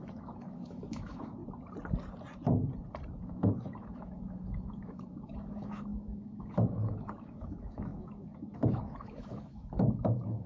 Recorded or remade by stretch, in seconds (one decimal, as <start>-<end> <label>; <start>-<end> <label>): 0.0-1.4 remade; 1.4-3.2 recorded; 3.2-10.5 remade